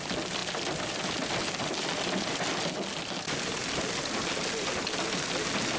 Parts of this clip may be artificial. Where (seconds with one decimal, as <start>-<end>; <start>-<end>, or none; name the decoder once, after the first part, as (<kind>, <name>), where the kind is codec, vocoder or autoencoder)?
none